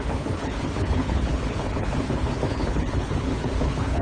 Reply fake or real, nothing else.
fake